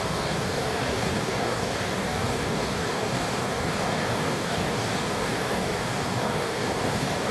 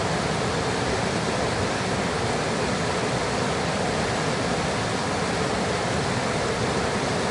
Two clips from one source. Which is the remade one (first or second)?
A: first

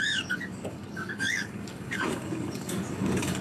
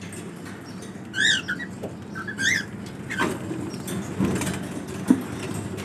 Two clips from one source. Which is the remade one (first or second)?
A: first